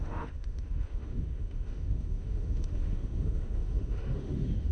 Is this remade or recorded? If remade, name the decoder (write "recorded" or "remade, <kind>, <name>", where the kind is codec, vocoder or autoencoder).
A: remade, autoencoder, DAC-VAE